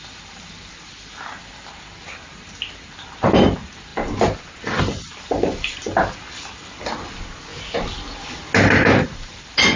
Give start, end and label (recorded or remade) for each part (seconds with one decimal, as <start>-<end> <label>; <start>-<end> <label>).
0.0-3.9 remade; 3.9-4.8 recorded; 4.8-5.8 remade; 5.8-6.6 recorded; 6.6-7.5 remade; 7.5-8.7 recorded; 8.7-9.8 remade